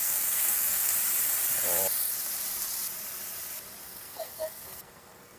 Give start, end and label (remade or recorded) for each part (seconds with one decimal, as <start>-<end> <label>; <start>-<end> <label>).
0.0-0.9 remade; 0.9-3.8 recorded; 3.8-5.4 remade